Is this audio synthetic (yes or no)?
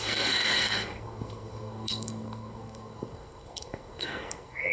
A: yes